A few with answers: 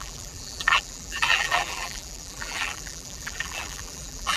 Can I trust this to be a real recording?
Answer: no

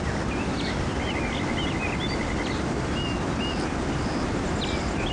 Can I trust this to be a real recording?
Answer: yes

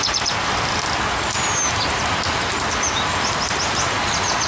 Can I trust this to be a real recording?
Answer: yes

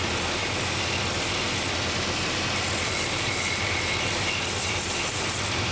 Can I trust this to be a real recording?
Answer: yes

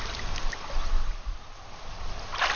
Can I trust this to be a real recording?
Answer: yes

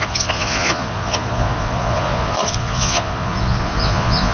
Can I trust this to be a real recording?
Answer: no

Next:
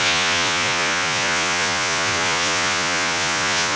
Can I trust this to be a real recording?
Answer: no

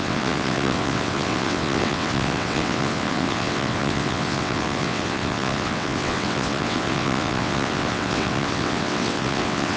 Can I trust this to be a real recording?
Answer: no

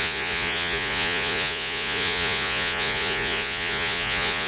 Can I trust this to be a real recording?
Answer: no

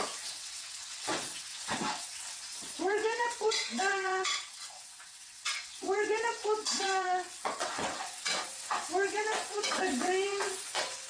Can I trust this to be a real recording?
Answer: no